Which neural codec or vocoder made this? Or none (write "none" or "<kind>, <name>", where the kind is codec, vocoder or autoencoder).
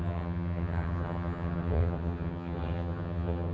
vocoder, HiFi-GAN